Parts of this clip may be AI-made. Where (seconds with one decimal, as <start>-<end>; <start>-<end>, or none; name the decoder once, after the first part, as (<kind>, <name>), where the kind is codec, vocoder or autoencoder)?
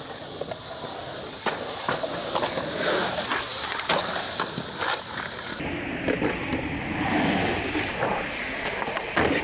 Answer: 2.1-2.7 (vocoder, BigVGAN v2); 3.5-4.9; 6.5-9.4